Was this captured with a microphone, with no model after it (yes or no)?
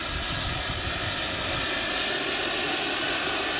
yes